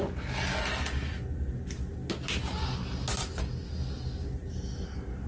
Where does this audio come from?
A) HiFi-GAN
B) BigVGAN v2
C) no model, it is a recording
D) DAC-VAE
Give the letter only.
C